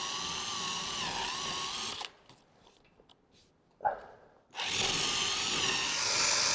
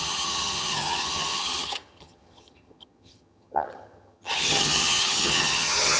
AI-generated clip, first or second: second